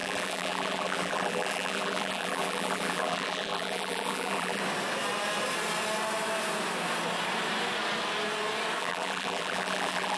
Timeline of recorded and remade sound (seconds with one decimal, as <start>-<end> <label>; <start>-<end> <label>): 0.0-4.6 remade; 4.6-8.8 recorded; 8.8-10.2 remade